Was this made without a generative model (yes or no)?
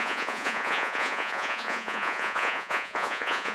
no